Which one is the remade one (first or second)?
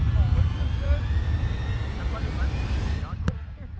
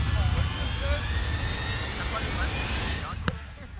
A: first